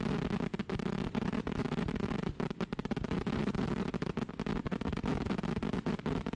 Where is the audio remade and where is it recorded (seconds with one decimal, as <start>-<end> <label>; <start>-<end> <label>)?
0.0-0.5 recorded; 0.5-4.3 remade; 4.3-6.4 recorded